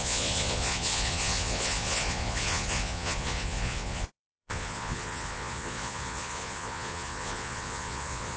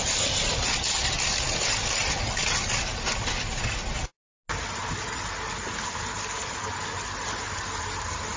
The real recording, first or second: second